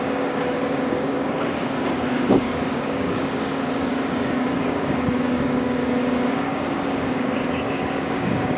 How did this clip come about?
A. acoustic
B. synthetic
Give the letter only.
B